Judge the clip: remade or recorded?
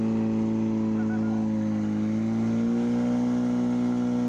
recorded